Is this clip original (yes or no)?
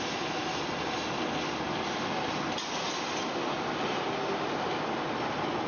yes